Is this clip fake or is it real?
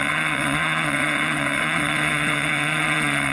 fake